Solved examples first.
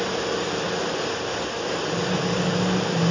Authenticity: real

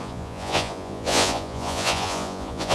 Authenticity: fake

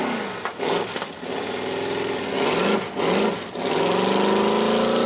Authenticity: real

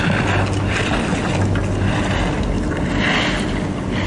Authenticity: real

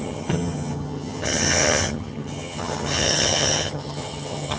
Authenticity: fake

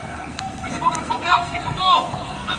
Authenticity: fake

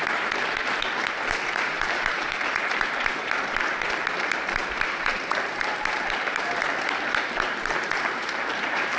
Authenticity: fake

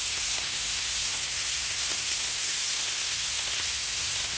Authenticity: fake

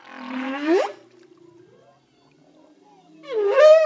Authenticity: real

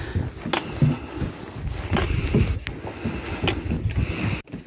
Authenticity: real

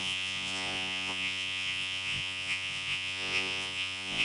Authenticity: fake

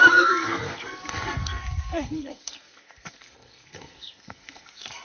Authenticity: fake